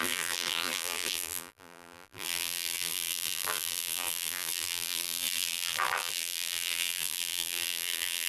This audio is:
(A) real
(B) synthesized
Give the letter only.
B